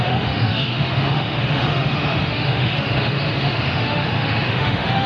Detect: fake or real fake